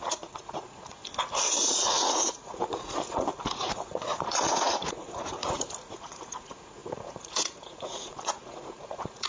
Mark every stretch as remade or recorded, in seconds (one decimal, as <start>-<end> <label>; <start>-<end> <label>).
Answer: 0.0-1.0 remade; 1.0-1.6 recorded; 1.6-9.3 remade